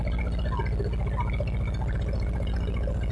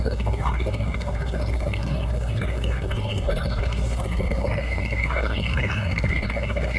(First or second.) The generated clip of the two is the second